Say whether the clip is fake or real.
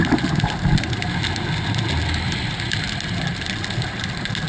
real